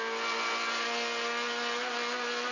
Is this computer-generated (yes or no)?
no